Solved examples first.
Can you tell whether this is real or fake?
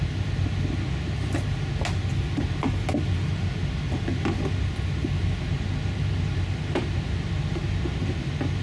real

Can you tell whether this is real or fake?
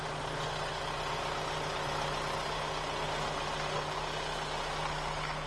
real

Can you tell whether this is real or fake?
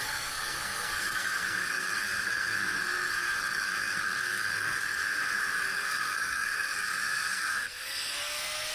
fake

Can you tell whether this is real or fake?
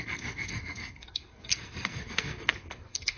fake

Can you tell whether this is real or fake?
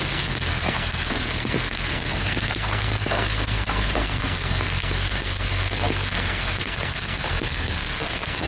fake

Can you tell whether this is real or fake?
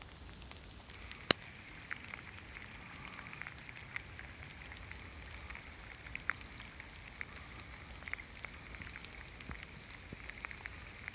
real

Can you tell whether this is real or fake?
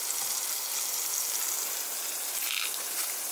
real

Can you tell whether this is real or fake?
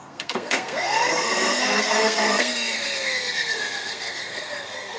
fake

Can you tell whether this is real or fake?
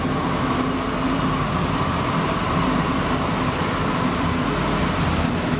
real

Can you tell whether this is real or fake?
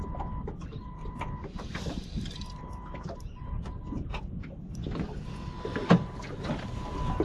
real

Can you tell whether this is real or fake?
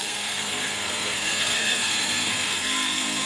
fake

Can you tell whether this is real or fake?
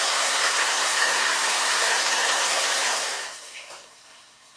fake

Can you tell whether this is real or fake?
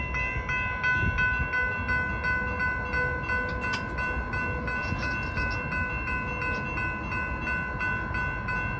real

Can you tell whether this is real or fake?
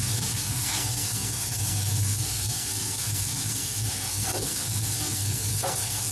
fake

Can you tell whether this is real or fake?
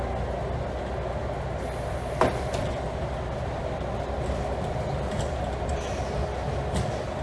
real